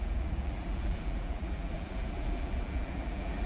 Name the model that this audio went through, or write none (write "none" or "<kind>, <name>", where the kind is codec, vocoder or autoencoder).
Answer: vocoder, BigVGAN v2